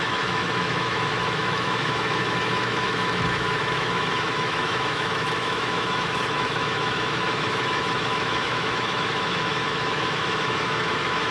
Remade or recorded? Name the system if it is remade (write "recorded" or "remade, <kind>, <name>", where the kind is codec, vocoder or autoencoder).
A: remade, autoencoder, DAC-VAE